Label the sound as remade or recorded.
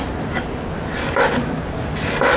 recorded